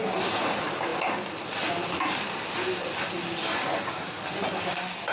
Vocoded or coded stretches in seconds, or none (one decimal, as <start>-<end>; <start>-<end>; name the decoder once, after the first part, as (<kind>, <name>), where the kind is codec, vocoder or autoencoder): none